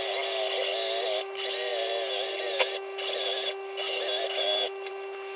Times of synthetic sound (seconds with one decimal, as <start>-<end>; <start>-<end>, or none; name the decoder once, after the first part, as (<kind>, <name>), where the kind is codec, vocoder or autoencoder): none